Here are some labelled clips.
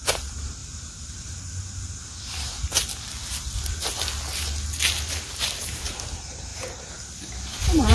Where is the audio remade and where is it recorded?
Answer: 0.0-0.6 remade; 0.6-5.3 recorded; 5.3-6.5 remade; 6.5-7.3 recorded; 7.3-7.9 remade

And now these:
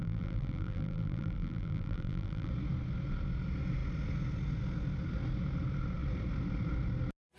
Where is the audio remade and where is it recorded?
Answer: 0.0-2.5 remade; 2.5-7.4 recorded

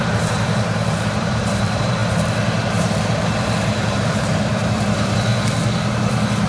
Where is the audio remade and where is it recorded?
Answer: 0.0-2.0 remade; 2.0-2.7 recorded; 2.7-5.3 remade; 5.3-6.1 recorded; 6.1-6.5 remade

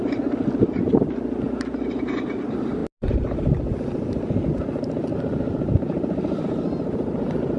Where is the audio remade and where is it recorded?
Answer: 0.0-5.1 recorded; 5.1-6.4 remade; 6.4-7.6 recorded

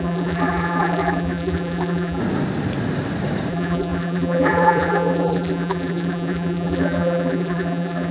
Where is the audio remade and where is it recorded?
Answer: 0.0-2.2 remade; 2.2-3.5 recorded; 3.5-8.1 remade

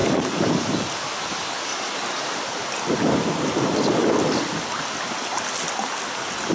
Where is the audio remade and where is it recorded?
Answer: 0.0-0.6 remade; 0.6-1.7 recorded; 1.7-4.1 remade; 4.1-6.5 recorded